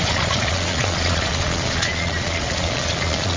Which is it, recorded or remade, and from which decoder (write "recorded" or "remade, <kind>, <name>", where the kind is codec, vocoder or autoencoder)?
remade, vocoder, Vocos